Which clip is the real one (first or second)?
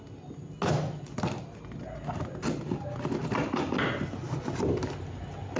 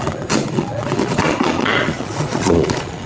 first